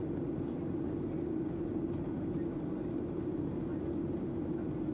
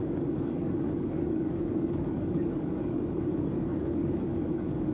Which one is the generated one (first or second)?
second